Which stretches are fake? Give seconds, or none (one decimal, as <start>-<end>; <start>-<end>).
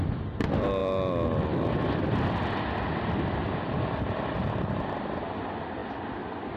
none